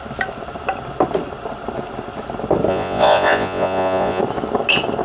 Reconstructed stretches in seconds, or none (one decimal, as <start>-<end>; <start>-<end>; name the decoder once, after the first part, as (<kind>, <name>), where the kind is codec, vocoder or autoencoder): 2.7-4.2 (vocoder, Vocos)